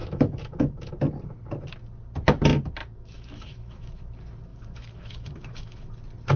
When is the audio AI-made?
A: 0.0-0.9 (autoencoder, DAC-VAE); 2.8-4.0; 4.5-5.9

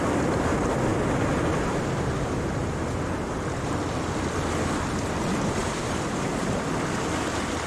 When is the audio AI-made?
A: 5.6-6.3 (vocoder, BigVGAN v2)

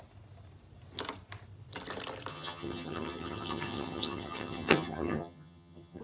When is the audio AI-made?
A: 2.3-6.0 (vocoder, HiFi-GAN)

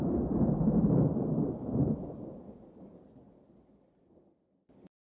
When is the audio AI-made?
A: none

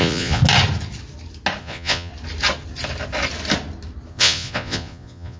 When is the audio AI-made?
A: 0.0-0.4 (vocoder, Vocos); 1.6-2.1; 4.1-5.4

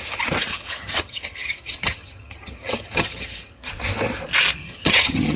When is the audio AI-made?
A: 0.5-3.7 (vocoder, HiFi-GAN); 4.6-5.4

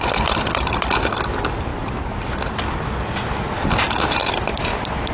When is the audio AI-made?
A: none

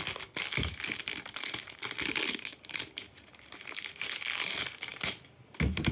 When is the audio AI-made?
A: none